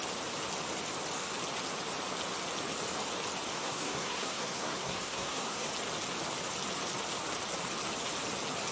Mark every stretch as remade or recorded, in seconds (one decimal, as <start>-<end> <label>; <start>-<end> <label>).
0.0-3.5 recorded; 3.5-5.7 remade; 5.7-8.7 recorded